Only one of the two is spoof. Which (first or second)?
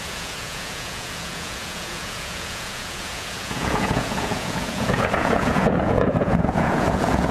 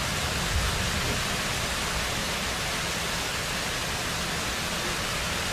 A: first